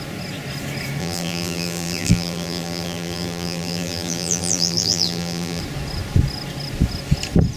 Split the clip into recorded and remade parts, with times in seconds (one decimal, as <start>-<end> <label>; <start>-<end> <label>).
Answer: 0.0-1.0 recorded; 1.0-5.6 remade; 5.6-7.6 recorded